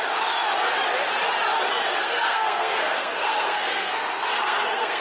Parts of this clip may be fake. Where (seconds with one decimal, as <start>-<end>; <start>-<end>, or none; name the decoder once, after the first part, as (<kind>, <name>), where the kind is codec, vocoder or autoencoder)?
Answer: 1.8-5.0 (codec, SNAC)